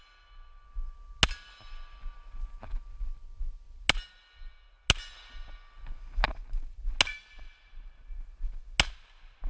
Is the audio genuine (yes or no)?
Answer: yes